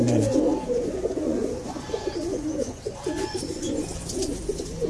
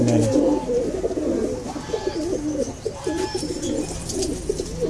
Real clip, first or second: second